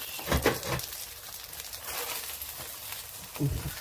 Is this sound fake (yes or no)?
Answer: no